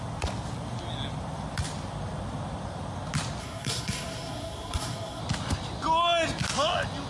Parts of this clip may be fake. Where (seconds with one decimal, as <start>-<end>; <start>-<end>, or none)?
3.4-5.2